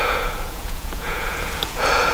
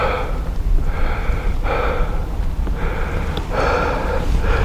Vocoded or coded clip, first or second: first